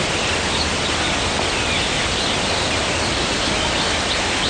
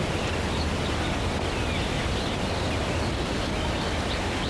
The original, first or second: second